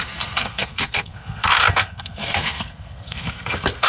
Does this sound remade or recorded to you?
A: remade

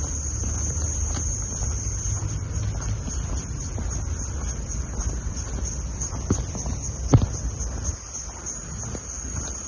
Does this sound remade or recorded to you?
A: recorded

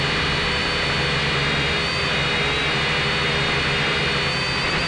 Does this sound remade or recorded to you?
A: recorded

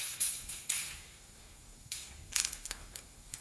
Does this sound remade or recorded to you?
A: remade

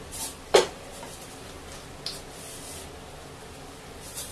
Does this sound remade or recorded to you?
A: recorded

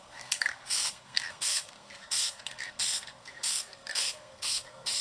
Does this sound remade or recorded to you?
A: remade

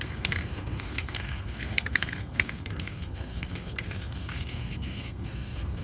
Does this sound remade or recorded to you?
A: remade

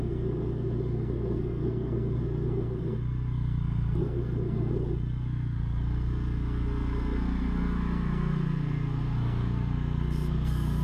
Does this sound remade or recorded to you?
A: remade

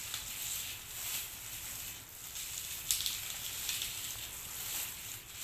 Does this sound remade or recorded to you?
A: recorded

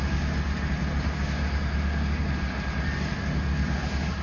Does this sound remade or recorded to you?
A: recorded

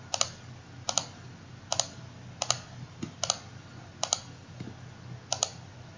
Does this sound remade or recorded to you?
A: recorded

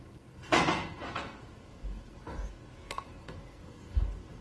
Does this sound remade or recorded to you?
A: remade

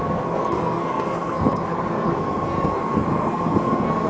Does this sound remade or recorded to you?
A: remade